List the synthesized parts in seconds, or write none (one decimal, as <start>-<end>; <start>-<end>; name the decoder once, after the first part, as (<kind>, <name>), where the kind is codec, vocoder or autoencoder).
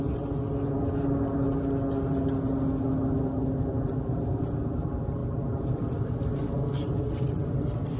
5.2-6.1 (vocoder, BigVGAN v2)